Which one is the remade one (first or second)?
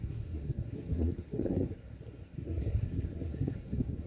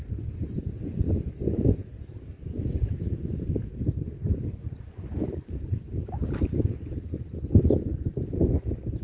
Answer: first